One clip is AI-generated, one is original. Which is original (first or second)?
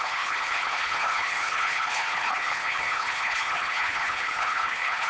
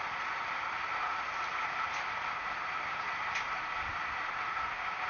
second